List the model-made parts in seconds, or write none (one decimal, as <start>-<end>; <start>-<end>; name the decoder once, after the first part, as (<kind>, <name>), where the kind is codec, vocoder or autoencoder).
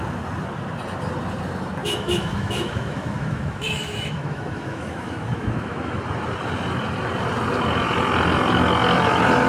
1.8-6.0 (autoencoder, DAC-VAE)